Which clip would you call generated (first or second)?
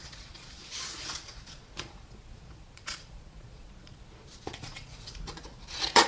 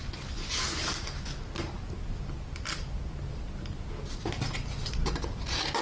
first